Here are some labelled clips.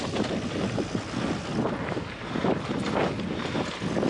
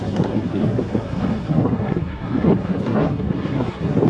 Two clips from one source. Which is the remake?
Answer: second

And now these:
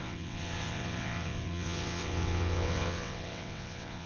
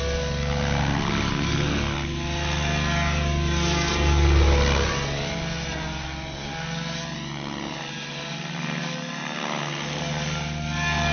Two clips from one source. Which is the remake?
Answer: first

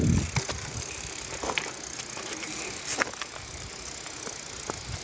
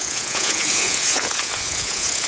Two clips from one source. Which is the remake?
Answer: second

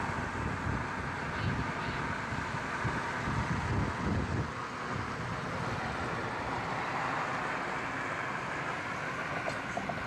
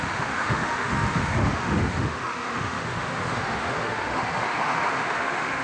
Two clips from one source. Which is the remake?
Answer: second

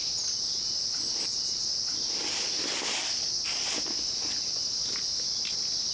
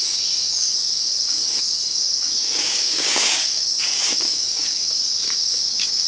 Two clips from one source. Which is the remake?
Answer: second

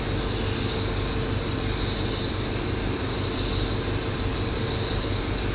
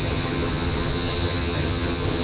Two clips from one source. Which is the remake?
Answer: second